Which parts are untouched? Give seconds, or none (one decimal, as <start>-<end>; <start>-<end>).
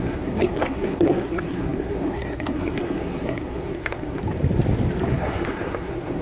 4.2-5.1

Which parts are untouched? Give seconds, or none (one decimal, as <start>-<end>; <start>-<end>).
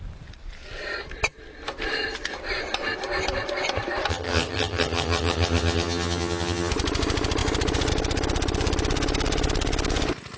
0.0-4.1; 6.7-10.4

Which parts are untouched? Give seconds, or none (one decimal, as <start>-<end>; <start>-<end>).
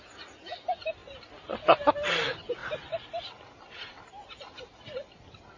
0.0-5.6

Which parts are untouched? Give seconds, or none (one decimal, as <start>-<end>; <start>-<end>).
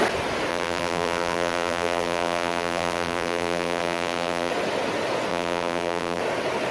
0.0-0.5; 4.5-5.3; 6.2-6.7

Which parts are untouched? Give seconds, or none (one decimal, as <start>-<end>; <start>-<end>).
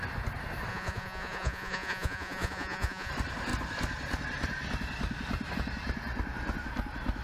0.0-0.7; 3.1-7.2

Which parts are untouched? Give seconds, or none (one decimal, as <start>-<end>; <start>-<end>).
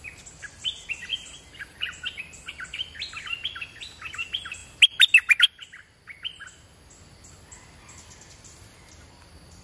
0.0-1.1; 2.2-9.6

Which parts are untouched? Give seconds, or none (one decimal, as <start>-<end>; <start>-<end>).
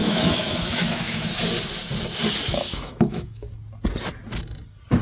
1.4-2.5; 3.5-5.0